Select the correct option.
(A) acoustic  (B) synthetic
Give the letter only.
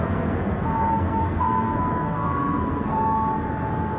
B